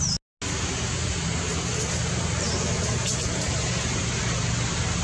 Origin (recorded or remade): recorded